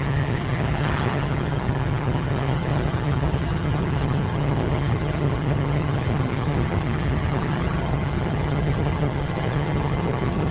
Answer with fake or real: fake